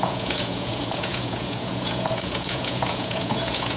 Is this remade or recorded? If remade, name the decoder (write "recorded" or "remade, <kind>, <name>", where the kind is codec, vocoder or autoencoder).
remade, vocoder, Vocos